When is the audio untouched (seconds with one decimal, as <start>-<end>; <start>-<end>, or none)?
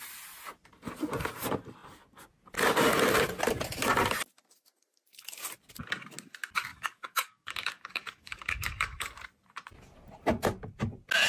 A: 0.0-6.7; 9.1-11.3